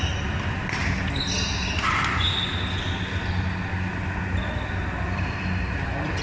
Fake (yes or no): no